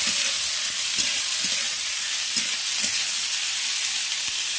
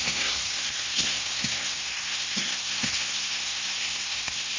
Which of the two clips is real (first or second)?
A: first